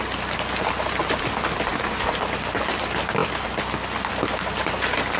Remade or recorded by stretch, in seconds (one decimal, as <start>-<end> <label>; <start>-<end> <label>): 0.0-5.2 recorded